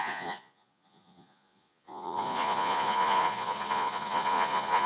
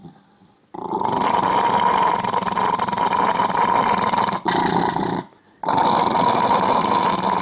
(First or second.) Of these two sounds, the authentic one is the second